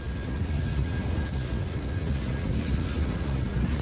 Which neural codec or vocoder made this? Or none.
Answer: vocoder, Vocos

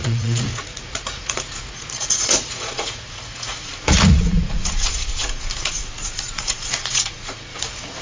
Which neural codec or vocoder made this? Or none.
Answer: vocoder, Vocos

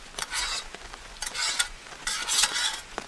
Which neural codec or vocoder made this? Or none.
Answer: vocoder, Vocos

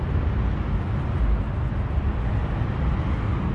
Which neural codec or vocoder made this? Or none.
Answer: none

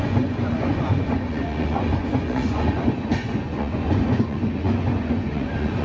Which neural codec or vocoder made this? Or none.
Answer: vocoder, Vocos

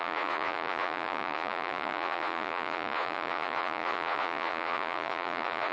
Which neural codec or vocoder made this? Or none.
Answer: vocoder, Vocos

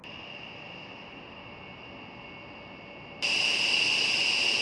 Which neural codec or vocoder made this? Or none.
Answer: none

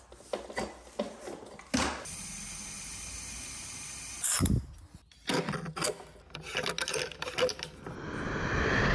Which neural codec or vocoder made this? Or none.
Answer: none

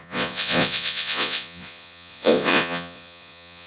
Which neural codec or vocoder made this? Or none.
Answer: vocoder, Vocos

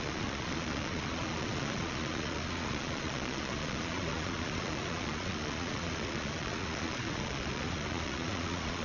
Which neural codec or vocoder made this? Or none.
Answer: vocoder, Vocos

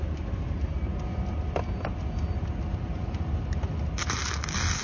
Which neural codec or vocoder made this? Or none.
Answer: none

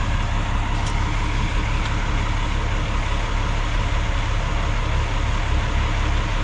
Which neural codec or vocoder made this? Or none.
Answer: none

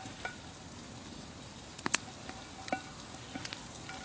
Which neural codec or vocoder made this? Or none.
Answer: none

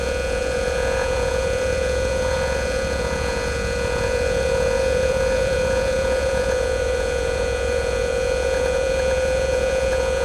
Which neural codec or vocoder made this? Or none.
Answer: vocoder, Vocos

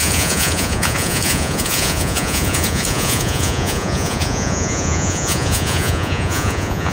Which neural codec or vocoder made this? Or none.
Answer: vocoder, Vocos